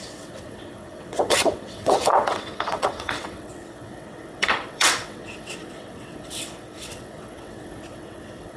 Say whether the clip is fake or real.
fake